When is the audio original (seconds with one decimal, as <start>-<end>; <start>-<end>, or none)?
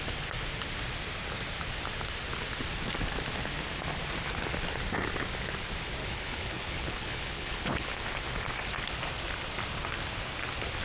0.0-6.0; 8.0-10.8